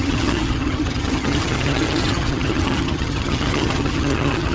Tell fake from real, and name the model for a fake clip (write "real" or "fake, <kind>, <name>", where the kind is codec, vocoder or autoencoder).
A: fake, vocoder, HiFi-GAN